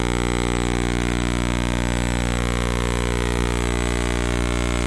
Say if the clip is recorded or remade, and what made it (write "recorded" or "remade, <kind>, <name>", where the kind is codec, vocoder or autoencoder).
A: remade, vocoder, BigVGAN v2